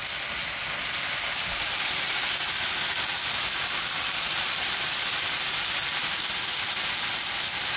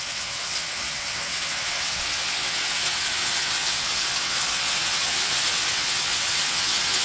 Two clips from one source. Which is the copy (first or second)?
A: second